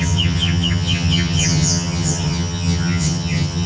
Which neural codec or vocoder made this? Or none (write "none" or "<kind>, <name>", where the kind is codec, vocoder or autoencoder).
vocoder, HiFi-GAN